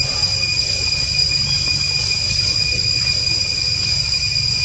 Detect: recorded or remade recorded